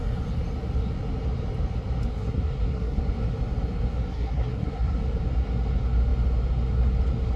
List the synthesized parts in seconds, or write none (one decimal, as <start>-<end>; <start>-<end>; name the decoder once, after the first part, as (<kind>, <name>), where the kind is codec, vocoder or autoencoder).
2.1-3.0 (codec, SNAC); 4.1-5.0

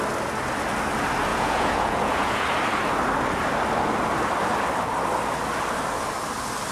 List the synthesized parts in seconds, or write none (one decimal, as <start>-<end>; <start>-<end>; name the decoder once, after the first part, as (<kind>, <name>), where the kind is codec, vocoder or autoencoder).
1.3-2.4 (vocoder, Vocos)